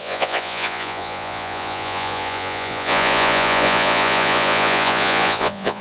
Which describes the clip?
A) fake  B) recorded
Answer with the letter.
A